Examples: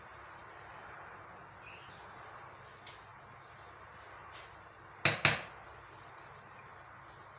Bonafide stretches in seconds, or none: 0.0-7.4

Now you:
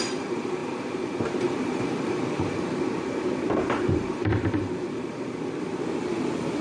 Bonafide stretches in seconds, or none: none

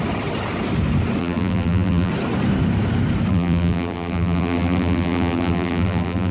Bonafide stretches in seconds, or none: 0.0-1.2; 2.1-3.3

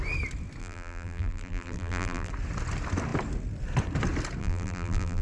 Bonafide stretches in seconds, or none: 0.0-0.6; 2.3-4.4

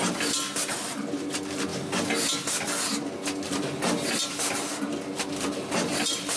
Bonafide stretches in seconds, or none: 0.0-6.4

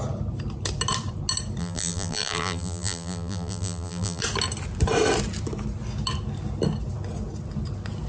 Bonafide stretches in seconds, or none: 0.0-1.6; 4.2-8.1

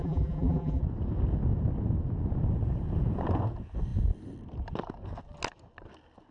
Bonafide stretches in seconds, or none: 0.8-6.3